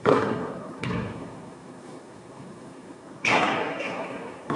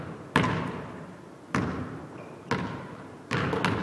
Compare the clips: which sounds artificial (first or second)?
first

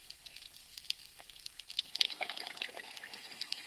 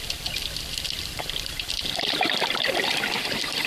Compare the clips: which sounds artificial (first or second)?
first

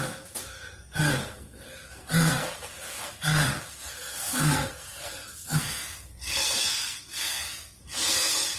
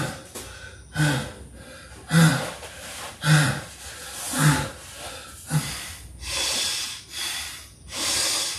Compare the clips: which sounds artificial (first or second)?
first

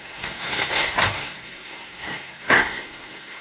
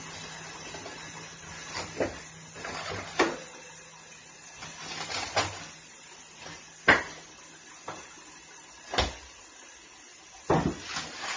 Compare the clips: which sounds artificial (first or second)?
first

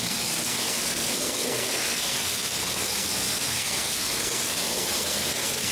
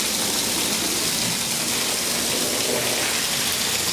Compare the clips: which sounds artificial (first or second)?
first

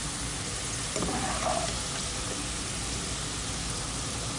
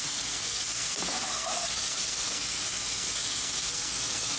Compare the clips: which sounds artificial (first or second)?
second